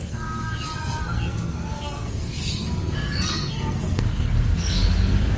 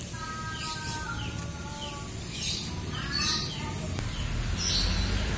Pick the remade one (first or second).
first